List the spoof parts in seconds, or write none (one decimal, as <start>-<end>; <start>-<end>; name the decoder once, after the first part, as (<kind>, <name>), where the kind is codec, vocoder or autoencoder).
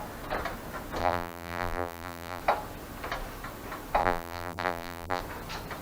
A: 1.0-2.4 (vocoder, BigVGAN v2); 4.0-5.2